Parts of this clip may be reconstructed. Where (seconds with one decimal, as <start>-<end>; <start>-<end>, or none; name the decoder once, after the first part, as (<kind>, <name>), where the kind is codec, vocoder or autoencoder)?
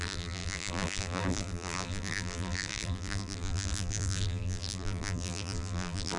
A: 0.0-6.2 (vocoder, BigVGAN v2)